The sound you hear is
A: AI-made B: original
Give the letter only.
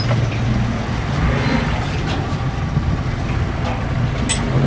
B